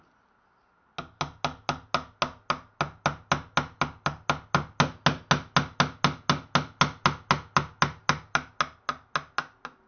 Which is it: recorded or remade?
recorded